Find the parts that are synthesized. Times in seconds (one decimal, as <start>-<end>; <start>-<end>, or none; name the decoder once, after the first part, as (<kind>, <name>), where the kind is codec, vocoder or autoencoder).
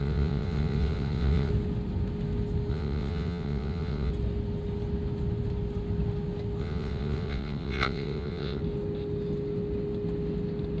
0.0-1.5 (vocoder, WaveNeXt); 2.7-4.1; 6.6-8.6